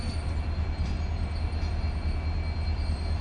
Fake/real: real